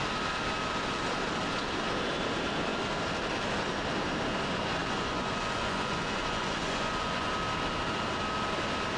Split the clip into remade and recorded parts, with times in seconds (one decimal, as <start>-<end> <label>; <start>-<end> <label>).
0.0-4.8 recorded; 4.8-7.3 remade; 7.3-9.0 recorded